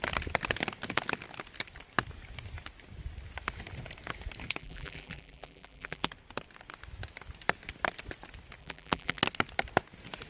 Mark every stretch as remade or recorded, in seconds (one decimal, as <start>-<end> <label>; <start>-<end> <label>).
0.0-4.6 recorded; 4.6-6.1 remade; 6.1-8.6 recorded; 8.6-9.2 remade; 9.2-10.3 recorded